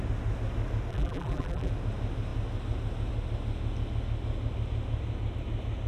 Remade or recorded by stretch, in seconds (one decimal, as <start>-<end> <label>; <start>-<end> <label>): 0.0-0.9 recorded; 0.9-1.7 remade; 1.7-5.9 recorded